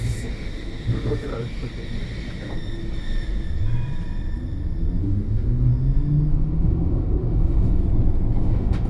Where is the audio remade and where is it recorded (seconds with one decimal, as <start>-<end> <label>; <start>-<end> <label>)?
0.0-1.3 remade; 1.3-5.0 recorded; 5.0-5.7 remade; 5.7-6.3 recorded; 6.3-7.8 remade; 7.8-8.4 recorded; 8.4-8.9 remade